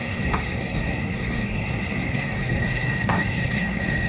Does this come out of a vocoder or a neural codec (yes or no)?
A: yes